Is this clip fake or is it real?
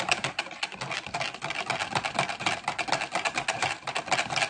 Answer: real